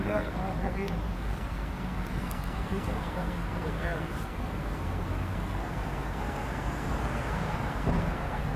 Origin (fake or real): fake